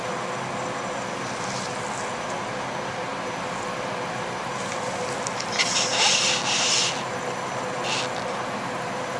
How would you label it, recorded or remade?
recorded